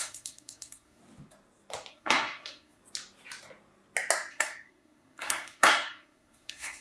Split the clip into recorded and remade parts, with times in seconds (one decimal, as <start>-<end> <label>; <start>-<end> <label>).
0.0-1.0 remade; 1.0-1.9 recorded; 1.9-2.8 remade; 2.8-4.3 recorded; 4.3-6.8 remade